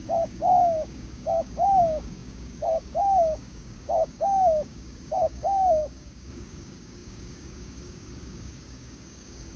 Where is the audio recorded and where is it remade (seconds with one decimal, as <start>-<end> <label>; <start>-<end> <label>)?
0.0-9.6 remade